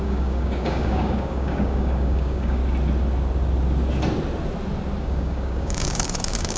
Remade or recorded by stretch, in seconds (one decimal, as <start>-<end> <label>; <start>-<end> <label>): 0.0-2.6 remade; 2.6-5.0 recorded; 5.0-6.6 remade